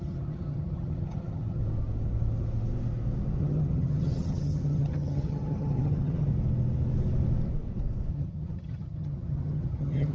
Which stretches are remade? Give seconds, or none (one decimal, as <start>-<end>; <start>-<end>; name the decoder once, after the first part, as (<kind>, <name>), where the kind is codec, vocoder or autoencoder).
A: 0.0-1.6 (vocoder, HiFi-GAN); 3.4-6.3; 8.1-10.1